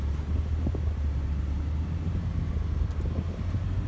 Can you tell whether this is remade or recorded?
recorded